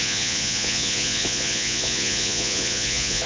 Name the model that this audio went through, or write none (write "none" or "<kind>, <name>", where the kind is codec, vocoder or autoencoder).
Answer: vocoder, Vocos